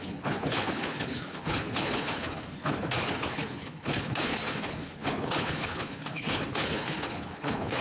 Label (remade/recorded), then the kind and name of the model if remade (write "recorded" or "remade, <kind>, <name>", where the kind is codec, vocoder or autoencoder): remade, codec, HILCodec